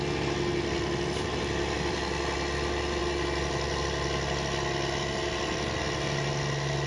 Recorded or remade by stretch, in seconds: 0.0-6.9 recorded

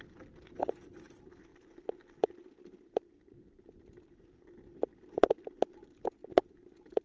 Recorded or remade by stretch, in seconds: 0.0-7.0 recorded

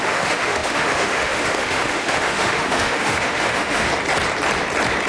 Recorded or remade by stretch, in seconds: 0.0-3.9 remade; 3.9-5.1 recorded

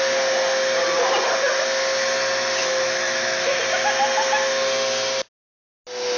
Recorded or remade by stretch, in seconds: 0.0-2.6 recorded; 2.6-3.6 remade; 3.6-6.2 recorded